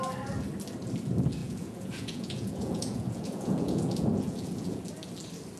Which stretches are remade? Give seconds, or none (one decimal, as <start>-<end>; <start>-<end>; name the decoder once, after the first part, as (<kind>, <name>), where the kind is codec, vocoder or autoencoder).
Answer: 1.4-4.8 (vocoder, Vocos)